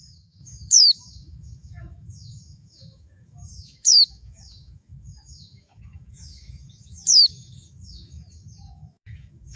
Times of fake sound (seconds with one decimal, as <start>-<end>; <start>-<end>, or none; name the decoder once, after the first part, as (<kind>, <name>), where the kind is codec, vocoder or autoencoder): 0.0-9.6 (autoencoder, DAC-VAE)